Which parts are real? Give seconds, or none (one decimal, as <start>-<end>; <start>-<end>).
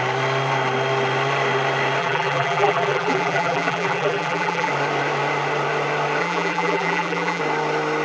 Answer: 0.0-2.0; 4.7-6.2; 7.4-8.0